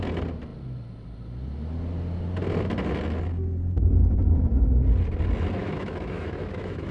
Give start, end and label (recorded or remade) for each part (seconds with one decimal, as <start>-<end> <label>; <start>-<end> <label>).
0.0-5.6 recorded; 5.6-6.9 remade